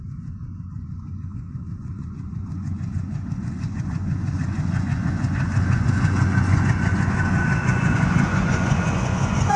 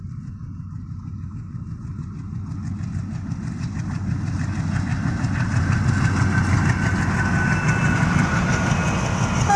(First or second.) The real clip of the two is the second